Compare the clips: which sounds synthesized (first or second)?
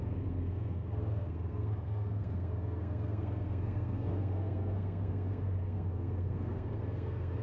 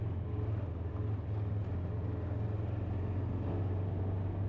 first